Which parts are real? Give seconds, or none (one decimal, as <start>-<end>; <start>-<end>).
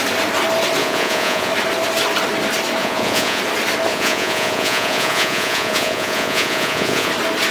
0.0-0.8; 1.5-2.8; 3.4-3.9; 7.1-7.5